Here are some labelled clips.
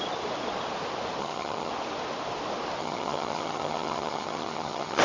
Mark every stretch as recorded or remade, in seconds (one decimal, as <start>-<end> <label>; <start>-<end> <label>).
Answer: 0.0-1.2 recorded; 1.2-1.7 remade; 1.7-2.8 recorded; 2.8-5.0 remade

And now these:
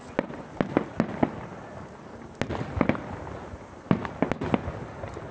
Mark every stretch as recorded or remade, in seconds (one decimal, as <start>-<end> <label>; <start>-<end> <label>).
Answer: 0.0-5.3 recorded

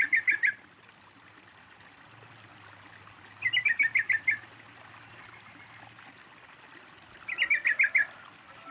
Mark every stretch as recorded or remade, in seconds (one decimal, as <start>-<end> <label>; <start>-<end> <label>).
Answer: 0.0-8.7 recorded